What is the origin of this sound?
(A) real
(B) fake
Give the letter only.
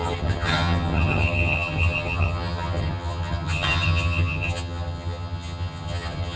B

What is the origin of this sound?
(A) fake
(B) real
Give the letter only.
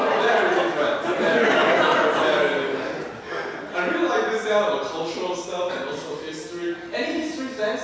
B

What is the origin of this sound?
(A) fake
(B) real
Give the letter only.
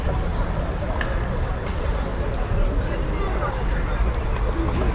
B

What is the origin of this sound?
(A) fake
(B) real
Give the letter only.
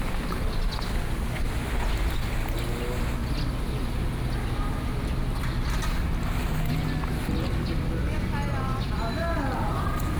B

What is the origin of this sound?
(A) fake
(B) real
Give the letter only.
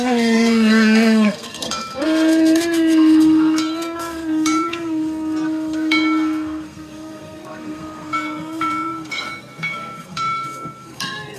A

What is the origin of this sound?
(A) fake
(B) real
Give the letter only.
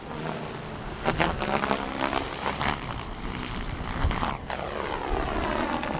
B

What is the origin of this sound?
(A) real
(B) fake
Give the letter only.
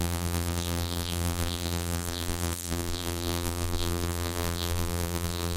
B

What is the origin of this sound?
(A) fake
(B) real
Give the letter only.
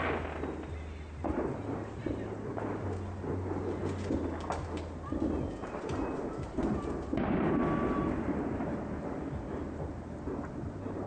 B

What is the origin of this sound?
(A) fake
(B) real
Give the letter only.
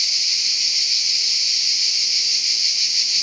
B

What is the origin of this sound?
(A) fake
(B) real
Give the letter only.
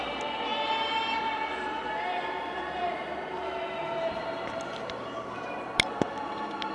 A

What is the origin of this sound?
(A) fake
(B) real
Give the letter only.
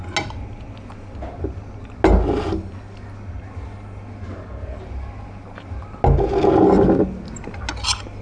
B